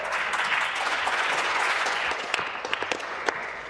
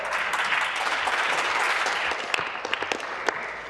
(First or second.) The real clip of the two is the second